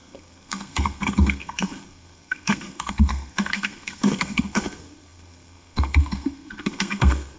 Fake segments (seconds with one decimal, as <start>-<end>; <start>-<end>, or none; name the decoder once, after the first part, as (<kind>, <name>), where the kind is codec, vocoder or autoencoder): 0.0-7.4 (codec, SNAC)

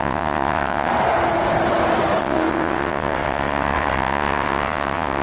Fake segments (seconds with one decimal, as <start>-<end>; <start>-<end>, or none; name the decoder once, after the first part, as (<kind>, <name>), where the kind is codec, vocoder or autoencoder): 0.0-0.9 (vocoder, WaveNeXt); 2.2-5.2

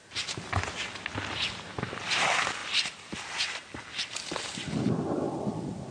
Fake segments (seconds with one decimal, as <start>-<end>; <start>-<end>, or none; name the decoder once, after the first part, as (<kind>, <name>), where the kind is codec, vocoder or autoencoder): none

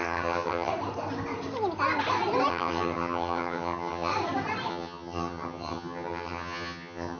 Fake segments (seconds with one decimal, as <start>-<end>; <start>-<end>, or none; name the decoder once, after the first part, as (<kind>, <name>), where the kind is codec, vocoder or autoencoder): 0.0-0.7 (vocoder, HiFi-GAN); 2.5-4.1; 4.7-7.2

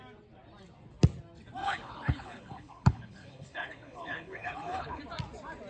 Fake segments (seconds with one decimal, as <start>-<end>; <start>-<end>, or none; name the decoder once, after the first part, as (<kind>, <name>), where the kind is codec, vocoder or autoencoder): 1.6-5.0 (codec, HILCodec)